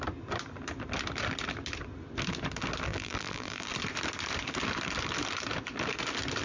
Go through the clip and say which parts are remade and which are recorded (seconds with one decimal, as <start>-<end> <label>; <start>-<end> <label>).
0.0-2.9 recorded; 2.9-3.7 remade; 3.7-6.4 recorded